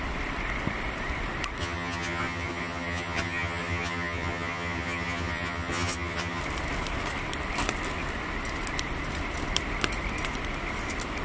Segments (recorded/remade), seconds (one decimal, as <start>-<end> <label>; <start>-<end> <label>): 0.0-1.6 recorded; 1.6-6.4 remade; 6.4-11.2 recorded